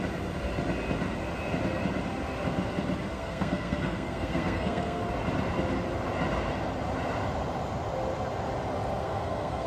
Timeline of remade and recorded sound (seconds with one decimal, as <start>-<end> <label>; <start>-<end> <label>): 0.0-3.1 recorded; 3.1-5.0 remade; 5.0-9.0 recorded; 9.0-9.7 remade

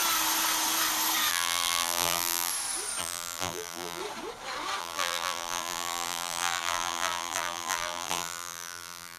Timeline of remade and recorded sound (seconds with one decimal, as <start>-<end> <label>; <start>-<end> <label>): 0.0-1.3 recorded; 1.3-2.5 remade; 2.5-3.0 recorded; 3.0-4.0 remade; 4.0-4.8 recorded; 4.8-9.2 remade

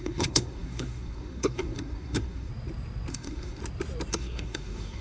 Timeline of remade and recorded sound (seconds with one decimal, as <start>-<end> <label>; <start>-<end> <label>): 0.0-2.5 remade; 2.5-3.1 recorded; 3.1-3.6 remade; 3.6-4.1 recorded; 4.1-5.0 remade

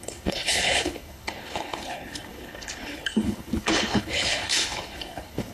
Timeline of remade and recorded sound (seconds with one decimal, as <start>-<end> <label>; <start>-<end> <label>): 0.0-5.5 remade

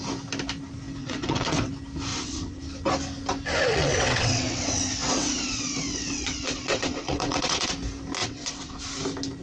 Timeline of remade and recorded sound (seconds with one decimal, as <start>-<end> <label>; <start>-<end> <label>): 0.0-1.0 recorded; 1.0-1.7 remade; 1.7-2.1 recorded; 2.1-2.6 remade; 2.6-3.7 recorded; 3.7-7.7 remade; 7.7-8.2 recorded; 8.2-8.8 remade; 8.8-9.4 recorded

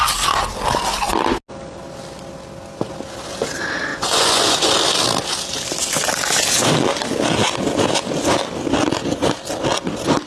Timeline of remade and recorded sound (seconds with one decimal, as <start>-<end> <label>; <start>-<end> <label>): 0.0-3.9 recorded; 3.9-4.7 remade; 4.7-10.3 recorded

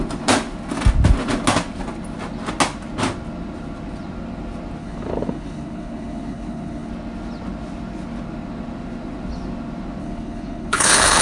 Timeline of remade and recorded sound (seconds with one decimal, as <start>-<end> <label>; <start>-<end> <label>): 0.0-4.8 recorded; 4.8-6.9 remade; 6.9-10.0 recorded; 10.0-11.2 remade